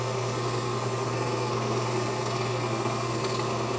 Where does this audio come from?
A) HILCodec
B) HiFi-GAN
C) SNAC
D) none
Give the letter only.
C